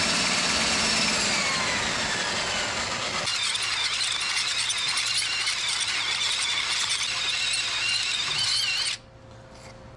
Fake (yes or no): no